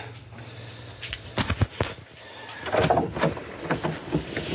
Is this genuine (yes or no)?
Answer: yes